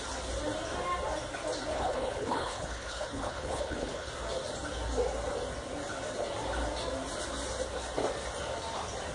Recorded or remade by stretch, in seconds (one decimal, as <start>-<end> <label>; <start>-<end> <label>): 0.0-1.7 recorded; 1.7-4.1 remade; 4.1-9.1 recorded